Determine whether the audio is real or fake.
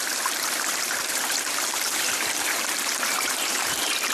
fake